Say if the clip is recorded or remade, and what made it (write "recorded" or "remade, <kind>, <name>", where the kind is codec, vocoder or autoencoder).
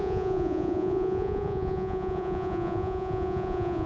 remade, vocoder, Vocos